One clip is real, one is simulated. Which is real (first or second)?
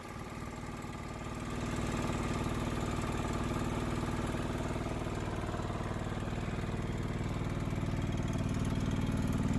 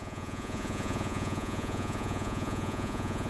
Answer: first